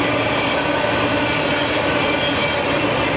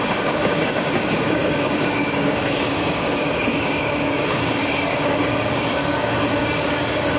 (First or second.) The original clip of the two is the first